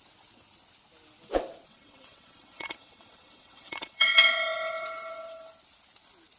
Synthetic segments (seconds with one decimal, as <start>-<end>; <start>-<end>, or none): 1.7-5.5